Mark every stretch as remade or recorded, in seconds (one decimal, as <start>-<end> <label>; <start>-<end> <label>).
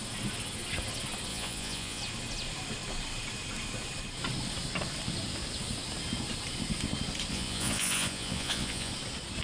0.0-1.3 recorded; 1.3-2.0 remade; 2.0-7.3 recorded; 7.3-8.9 remade; 8.9-9.4 recorded